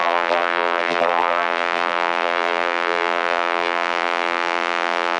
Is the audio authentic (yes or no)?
no